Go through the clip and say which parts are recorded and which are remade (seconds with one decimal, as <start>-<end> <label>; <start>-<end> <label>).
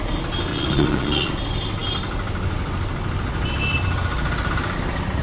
0.0-0.5 recorded; 0.5-1.3 remade; 1.3-5.2 recorded